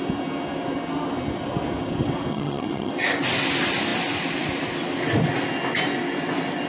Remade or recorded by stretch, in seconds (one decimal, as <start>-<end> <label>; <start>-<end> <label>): 0.0-2.3 recorded; 2.3-2.9 remade; 2.9-6.7 recorded